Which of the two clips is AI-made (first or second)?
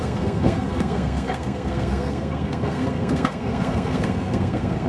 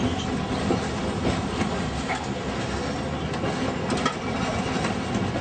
first